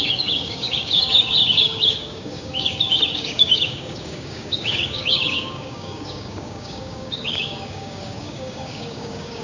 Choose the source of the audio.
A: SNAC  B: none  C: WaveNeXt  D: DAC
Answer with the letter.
D